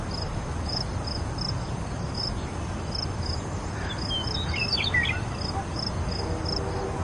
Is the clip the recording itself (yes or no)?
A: yes